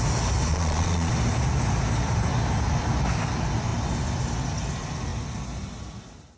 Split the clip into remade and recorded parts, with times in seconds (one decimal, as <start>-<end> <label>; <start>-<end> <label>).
0.0-0.5 recorded; 0.5-1.1 remade; 1.1-6.4 recorded